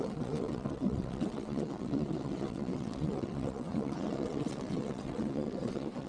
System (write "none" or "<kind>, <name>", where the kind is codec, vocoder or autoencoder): vocoder, WaveNeXt